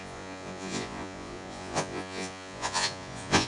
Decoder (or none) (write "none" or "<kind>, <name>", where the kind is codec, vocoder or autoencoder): vocoder, Vocos